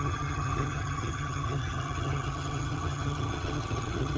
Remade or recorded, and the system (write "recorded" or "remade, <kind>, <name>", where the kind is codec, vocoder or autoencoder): remade, vocoder, HiFi-GAN